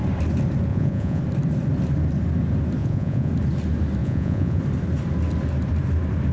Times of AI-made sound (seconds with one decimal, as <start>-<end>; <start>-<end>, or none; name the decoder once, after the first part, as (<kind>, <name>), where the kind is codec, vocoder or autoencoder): 0.7-1.2 (vocoder, Vocos); 2.8-3.3; 4.0-4.6

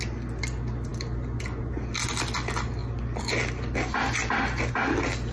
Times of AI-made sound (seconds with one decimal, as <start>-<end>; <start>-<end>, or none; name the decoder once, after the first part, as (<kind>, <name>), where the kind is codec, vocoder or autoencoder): none

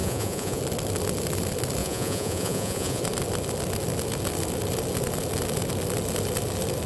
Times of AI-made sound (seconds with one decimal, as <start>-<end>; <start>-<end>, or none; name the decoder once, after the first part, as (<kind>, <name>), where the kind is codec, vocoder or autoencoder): 0.0-0.6 (vocoder, Vocos); 1.8-3.0